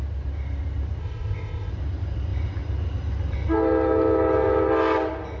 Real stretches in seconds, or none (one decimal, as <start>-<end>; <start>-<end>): 0.0-1.0; 1.7-5.4